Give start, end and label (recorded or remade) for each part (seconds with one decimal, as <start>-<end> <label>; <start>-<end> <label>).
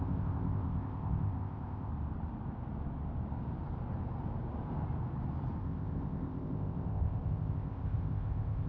0.0-1.9 remade; 1.9-5.6 recorded; 5.6-8.7 remade